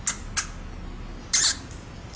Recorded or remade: recorded